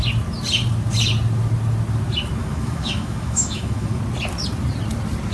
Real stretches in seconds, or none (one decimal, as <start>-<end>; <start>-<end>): 0.0-2.4; 4.0-5.3